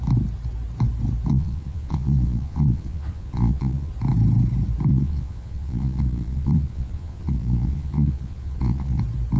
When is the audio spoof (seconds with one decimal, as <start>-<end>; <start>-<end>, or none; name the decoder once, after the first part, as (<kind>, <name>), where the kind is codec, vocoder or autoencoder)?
1.3-3.9 (vocoder, Vocos); 4.9-9.0